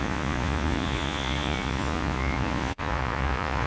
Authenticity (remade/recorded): remade